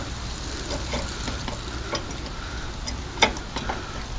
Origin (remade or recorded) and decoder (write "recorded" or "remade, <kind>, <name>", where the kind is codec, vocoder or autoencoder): recorded